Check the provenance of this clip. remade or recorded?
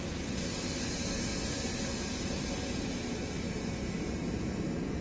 recorded